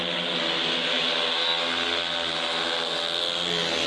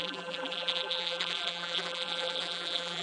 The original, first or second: first